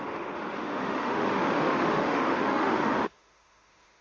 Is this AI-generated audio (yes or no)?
yes